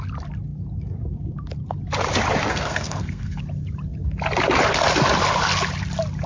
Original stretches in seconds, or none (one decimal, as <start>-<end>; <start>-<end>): 0.0-2.5; 3.4-6.3